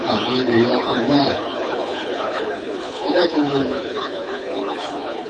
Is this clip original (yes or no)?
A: no